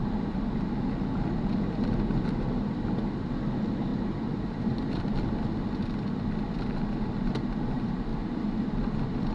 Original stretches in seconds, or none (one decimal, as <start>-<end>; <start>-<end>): 0.0-3.9; 5.0-8.1; 8.7-9.3